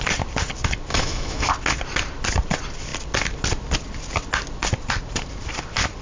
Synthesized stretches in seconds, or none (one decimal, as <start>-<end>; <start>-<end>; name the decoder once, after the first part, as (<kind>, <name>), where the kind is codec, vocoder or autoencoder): 0.9-1.5 (autoencoder, DAC-VAE)